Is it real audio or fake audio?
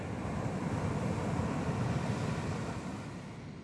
real